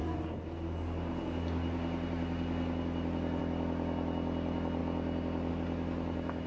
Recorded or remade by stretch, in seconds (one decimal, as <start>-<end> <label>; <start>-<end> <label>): 0.0-6.5 recorded